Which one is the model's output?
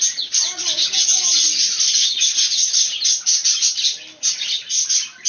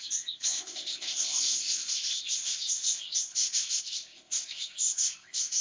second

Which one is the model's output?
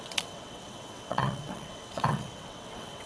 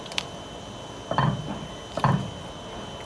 first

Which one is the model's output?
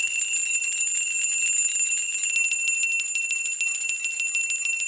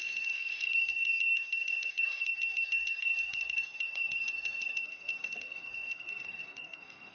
second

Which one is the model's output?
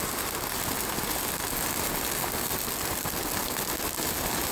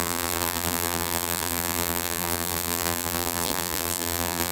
second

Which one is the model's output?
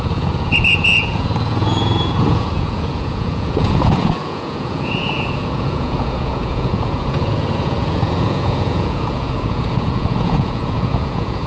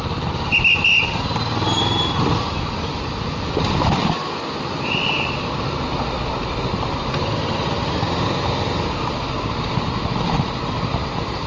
first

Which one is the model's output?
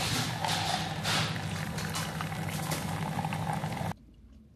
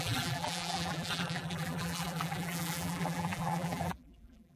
second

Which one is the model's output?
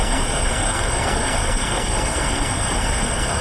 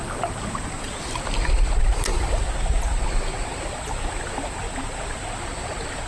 first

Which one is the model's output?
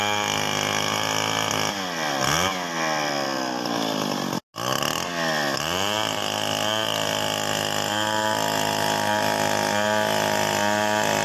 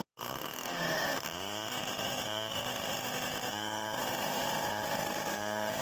second